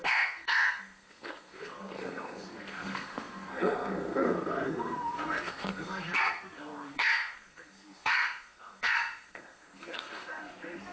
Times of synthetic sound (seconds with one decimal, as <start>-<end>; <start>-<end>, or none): 0.0-10.9